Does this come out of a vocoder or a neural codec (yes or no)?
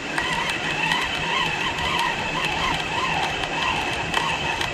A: no